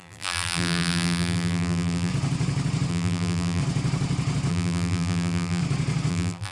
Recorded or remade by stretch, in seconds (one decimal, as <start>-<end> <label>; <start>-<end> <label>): 0.0-2.1 remade; 2.1-2.9 recorded; 2.9-3.6 remade; 3.6-4.5 recorded; 4.5-5.6 remade; 5.6-6.1 recorded; 6.1-6.5 remade